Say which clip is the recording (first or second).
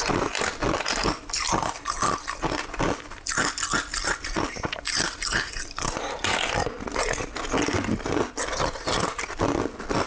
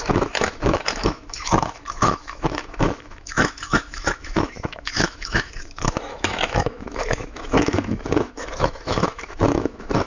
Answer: first